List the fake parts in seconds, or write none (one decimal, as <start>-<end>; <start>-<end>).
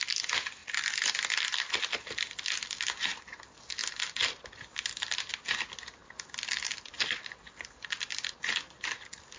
none